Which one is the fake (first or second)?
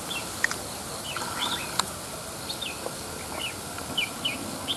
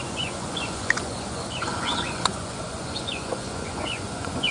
second